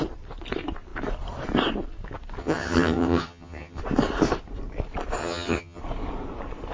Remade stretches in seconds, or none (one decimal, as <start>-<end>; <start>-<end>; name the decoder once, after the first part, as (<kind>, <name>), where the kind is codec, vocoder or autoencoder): 2.4-3.8 (vocoder, HiFi-GAN); 5.2-5.8